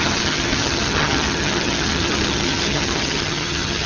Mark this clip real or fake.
fake